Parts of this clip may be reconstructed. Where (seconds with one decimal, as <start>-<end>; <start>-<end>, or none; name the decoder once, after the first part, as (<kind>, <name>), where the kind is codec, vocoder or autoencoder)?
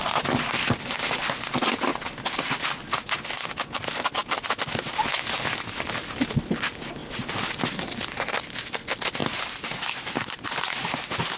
7.0-7.6 (vocoder, BigVGAN v2); 9.2-10.4